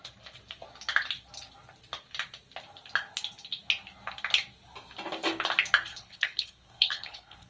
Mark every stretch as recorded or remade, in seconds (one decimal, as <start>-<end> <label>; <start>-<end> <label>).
0.0-5.9 recorded; 5.9-7.5 remade